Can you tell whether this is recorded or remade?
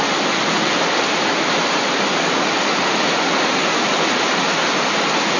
recorded